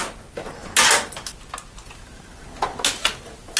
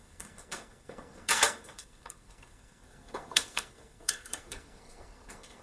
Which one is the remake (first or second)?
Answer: second